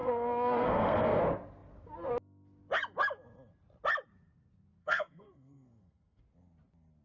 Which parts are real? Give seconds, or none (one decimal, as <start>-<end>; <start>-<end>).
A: 1.2-4.8; 6.2-7.0